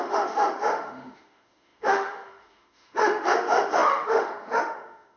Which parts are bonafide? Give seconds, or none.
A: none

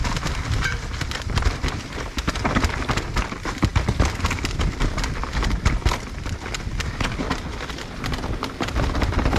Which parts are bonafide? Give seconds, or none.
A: 0.0-9.4

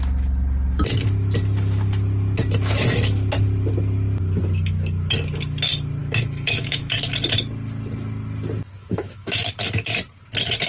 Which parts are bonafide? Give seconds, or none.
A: 0.0-6.0; 7.1-8.8; 9.5-10.7